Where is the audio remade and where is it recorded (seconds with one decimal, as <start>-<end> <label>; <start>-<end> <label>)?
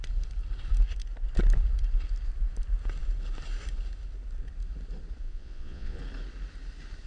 0.0-5.2 recorded; 5.2-6.0 remade; 6.0-7.1 recorded